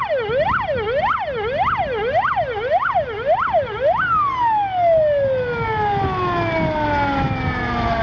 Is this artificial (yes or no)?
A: no